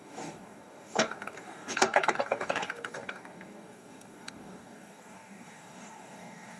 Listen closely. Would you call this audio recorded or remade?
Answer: remade